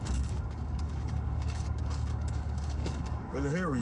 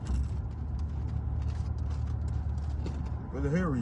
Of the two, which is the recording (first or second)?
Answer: second